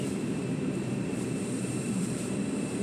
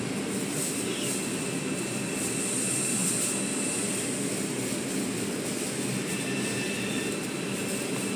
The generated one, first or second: first